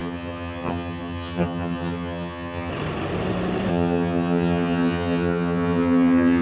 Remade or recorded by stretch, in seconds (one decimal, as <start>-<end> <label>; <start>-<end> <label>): 0.0-2.7 remade; 2.7-3.7 recorded; 3.7-6.4 remade